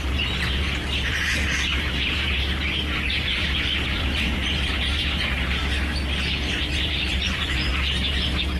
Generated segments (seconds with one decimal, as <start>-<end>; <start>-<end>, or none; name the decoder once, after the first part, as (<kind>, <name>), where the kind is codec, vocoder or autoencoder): 0.0-5.6 (vocoder, BigVGAN v2); 6.6-7.7

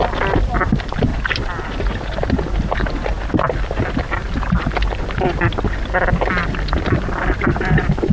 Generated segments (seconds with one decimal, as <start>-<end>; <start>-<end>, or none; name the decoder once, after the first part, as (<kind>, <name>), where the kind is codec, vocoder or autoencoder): 1.1-4.6 (vocoder, BigVGAN v2)

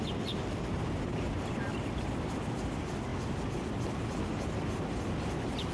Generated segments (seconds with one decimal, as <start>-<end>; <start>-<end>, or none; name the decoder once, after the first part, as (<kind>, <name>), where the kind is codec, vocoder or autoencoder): 1.7-2.3 (vocoder, BigVGAN v2)

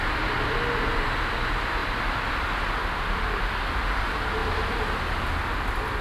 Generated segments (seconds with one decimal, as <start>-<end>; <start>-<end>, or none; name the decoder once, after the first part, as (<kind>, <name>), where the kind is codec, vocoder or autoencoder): 1.8-2.3 (vocoder, BigVGAN v2)